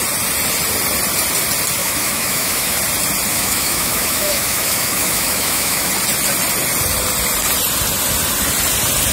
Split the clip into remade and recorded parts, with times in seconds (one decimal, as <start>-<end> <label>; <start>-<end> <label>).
0.0-1.8 recorded; 1.8-2.8 remade; 2.8-3.3 recorded; 3.3-5.9 remade; 5.9-9.1 recorded